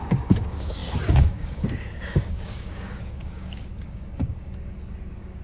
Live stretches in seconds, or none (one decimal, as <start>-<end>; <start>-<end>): none

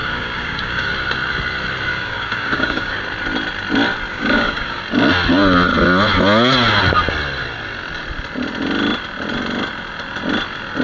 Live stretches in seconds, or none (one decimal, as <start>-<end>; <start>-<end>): 0.9-1.9; 2.9-4.1; 4.8-10.8

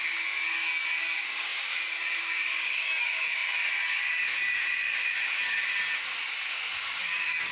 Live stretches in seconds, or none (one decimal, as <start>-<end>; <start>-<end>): 5.7-6.3